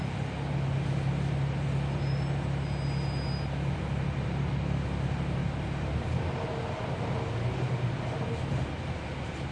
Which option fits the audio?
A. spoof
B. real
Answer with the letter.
B